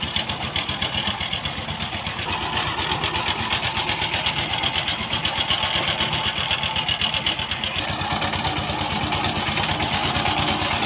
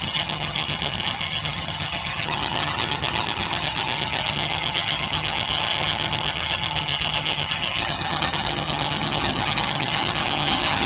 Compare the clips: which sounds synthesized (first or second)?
second